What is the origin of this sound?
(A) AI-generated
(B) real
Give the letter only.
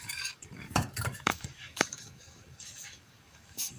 A